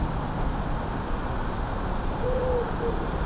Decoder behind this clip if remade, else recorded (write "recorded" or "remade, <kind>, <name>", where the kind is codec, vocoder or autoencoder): recorded